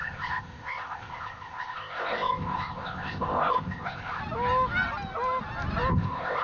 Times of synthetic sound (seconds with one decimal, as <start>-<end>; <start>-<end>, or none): 0.0-4.2; 5.9-6.4